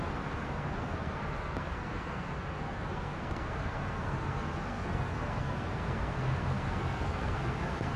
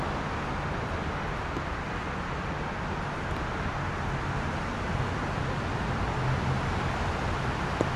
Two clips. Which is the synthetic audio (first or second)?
first